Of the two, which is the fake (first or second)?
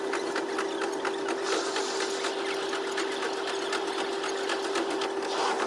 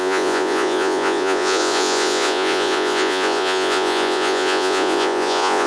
second